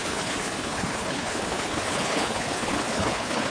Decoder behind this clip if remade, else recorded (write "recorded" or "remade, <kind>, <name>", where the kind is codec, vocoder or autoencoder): remade, codec, HILCodec